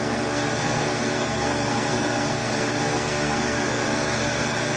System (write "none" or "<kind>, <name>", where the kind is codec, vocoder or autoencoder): codec, SNAC